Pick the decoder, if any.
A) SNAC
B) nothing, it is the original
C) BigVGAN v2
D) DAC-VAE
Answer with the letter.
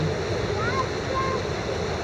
B